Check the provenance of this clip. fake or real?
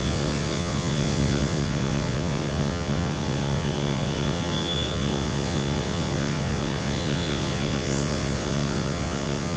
fake